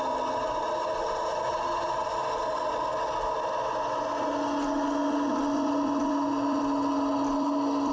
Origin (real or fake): real